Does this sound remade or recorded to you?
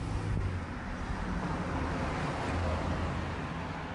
recorded